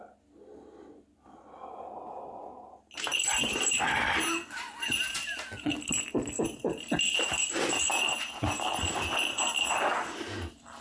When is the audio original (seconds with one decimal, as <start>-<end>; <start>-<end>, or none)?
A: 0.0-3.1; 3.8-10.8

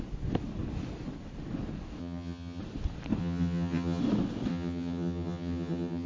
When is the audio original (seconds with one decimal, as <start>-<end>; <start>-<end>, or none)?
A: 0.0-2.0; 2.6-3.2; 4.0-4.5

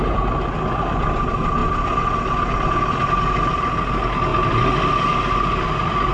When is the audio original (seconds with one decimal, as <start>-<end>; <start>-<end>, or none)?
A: 0.0-6.1

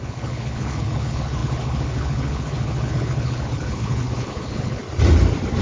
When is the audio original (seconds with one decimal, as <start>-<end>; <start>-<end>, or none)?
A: 4.8-5.6

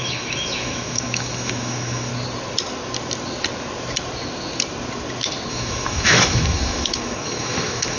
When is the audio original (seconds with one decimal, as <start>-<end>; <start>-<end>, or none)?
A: 2.1-5.5